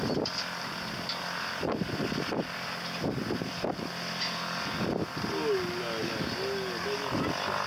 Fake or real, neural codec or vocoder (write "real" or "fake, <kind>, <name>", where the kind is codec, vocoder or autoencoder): real